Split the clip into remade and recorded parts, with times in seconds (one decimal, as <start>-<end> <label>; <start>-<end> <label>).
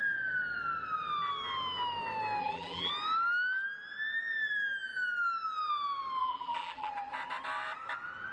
0.0-2.4 recorded; 2.4-2.9 remade; 2.9-6.2 recorded; 6.2-6.9 remade; 6.9-8.3 recorded